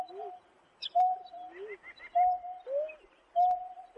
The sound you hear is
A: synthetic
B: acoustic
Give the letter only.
B